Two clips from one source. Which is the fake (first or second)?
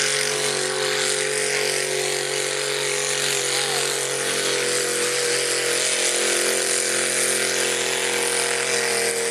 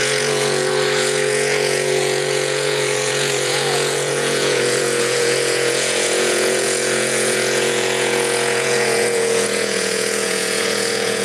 second